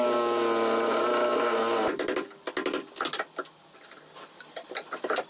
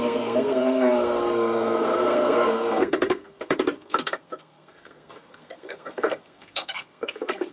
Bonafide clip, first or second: first